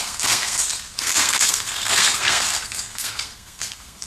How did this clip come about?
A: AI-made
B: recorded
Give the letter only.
A